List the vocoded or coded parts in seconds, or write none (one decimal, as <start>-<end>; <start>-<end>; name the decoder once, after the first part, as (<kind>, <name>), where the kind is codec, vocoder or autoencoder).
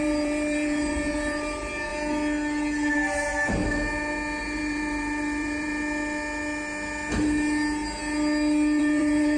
0.0-1.9 (vocoder, BigVGAN v2); 2.9-3.6; 4.4-5.7; 8.8-9.4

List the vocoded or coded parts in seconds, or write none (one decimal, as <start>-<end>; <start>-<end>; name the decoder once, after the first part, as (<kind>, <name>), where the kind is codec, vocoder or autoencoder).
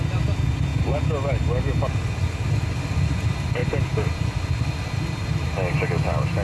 none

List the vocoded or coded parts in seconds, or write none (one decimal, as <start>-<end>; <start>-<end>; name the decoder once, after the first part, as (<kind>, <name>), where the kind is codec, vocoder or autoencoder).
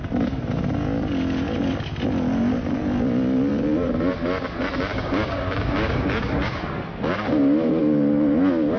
4.9-6.7 (codec, DAC)